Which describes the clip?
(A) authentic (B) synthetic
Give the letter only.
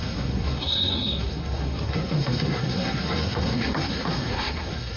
B